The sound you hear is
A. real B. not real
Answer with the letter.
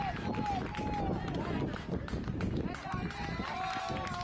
A